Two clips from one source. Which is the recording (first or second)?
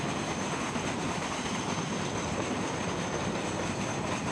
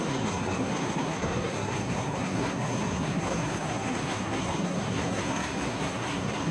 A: first